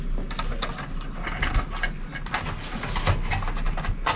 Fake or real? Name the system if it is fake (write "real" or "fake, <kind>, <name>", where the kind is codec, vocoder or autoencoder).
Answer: real